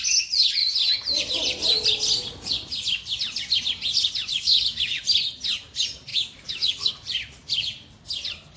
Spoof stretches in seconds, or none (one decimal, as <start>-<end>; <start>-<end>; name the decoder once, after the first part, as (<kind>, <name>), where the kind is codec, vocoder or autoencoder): 4.3-5.0 (autoencoder, DAC-VAE); 6.1-6.9